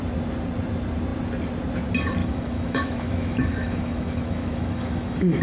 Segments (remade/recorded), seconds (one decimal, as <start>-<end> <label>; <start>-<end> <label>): 0.0-2.2 recorded; 2.2-5.4 remade